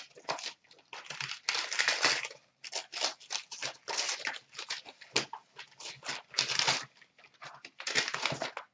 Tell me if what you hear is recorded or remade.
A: recorded